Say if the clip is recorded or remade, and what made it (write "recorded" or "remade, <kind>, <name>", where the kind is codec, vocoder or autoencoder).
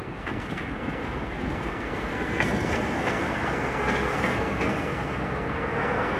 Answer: remade, codec, SNAC